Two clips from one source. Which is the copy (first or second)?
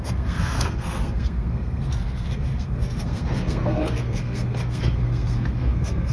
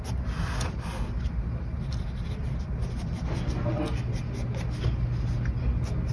first